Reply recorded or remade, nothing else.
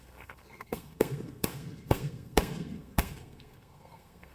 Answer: remade